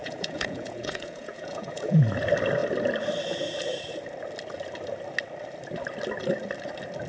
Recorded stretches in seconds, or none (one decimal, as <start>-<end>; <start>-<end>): 2.0-7.1